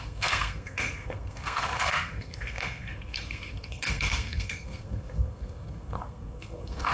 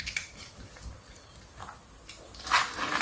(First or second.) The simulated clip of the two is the first